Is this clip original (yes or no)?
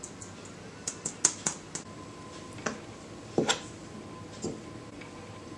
yes